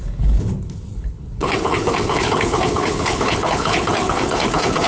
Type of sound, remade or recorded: remade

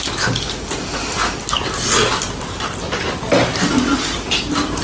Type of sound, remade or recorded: recorded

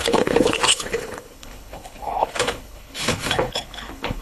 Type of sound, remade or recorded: remade